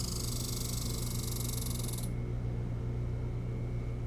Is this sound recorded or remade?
recorded